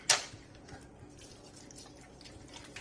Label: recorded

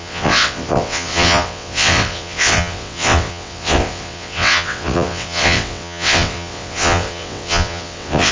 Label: remade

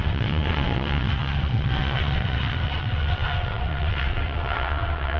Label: remade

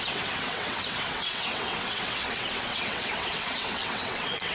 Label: remade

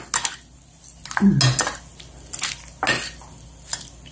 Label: recorded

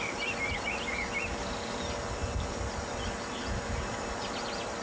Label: recorded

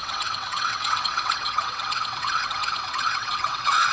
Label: remade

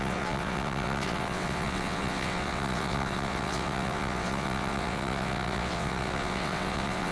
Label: remade